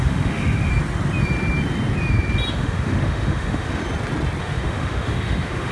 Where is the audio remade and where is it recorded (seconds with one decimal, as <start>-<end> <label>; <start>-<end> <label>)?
0.0-0.7 remade; 0.7-2.5 recorded; 2.5-3.8 remade; 3.8-4.4 recorded; 4.4-5.7 remade